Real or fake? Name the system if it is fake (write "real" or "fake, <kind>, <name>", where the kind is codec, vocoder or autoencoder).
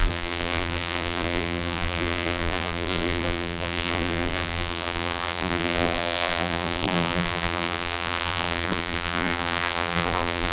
fake, vocoder, BigVGAN v2